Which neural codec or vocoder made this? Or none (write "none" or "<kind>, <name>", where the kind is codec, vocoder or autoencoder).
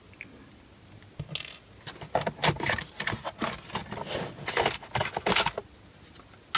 none